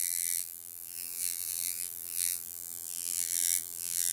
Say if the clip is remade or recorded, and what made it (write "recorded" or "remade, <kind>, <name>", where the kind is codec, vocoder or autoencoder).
remade, vocoder, BigVGAN v2